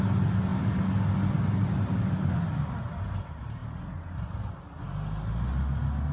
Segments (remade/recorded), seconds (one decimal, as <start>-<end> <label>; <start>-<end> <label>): 0.0-6.1 recorded